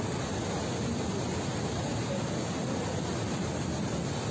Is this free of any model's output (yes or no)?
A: yes